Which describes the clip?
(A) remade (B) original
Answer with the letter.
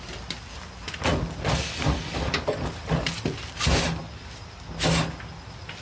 B